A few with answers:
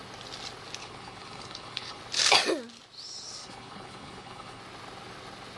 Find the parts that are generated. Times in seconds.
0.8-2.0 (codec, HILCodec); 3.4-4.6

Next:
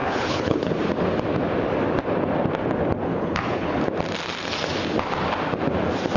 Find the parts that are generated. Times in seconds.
0.0-0.7 (codec, HILCodec); 3.1-3.8

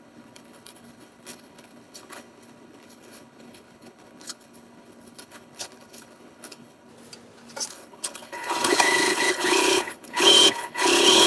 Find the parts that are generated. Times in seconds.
0.0-6.9 (codec, HILCodec); 7.7-11.3